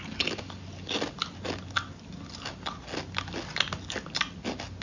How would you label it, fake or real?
real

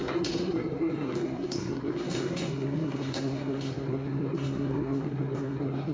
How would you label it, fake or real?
fake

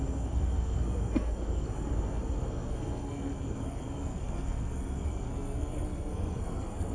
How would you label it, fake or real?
fake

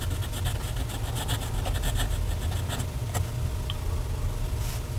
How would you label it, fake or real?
real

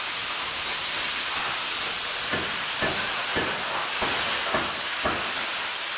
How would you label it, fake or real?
real